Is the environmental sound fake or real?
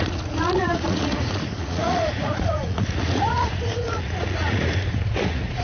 fake